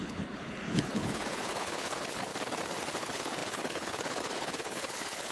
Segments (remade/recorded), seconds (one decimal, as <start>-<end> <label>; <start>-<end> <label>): 0.0-2.3 remade; 2.3-3.0 recorded; 3.0-5.3 remade